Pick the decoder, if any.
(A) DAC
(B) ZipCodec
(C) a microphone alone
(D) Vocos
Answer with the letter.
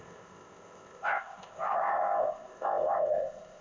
B